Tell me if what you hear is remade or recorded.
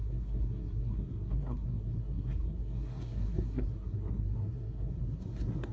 remade